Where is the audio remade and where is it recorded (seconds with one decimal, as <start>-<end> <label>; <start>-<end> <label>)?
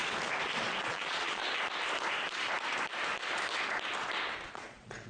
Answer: 0.0-0.8 recorded; 0.8-1.4 remade; 1.4-4.5 recorded; 4.5-5.1 remade